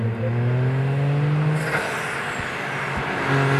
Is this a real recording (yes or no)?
yes